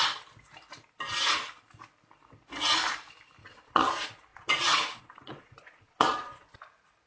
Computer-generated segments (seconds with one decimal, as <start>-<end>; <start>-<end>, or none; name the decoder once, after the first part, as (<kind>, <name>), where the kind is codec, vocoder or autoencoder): 3.4-3.9 (vocoder, Vocos); 4.3-6.5